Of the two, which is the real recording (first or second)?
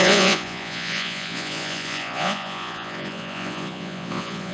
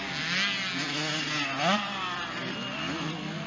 second